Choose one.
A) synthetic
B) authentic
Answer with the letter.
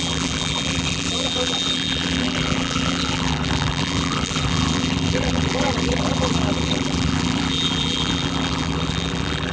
A